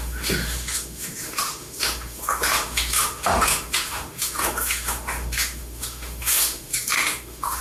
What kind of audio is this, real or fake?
fake